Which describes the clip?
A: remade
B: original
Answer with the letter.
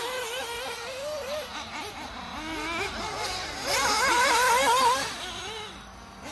B